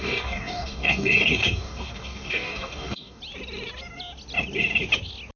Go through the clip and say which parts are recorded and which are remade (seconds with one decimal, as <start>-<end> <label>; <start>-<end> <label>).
0.0-3.2 remade; 3.2-5.4 recorded